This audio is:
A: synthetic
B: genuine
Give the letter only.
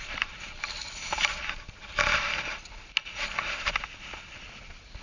B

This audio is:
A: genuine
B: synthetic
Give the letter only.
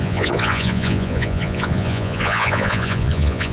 B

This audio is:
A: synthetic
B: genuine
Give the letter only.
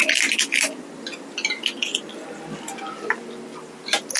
B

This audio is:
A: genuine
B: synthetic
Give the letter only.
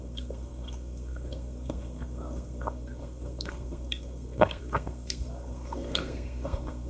B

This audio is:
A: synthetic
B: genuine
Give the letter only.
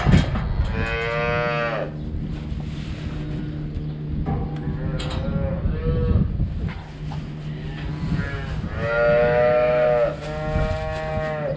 B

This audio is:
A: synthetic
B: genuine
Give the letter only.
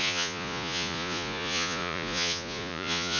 A